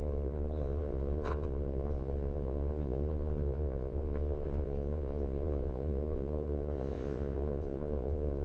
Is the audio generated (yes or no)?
yes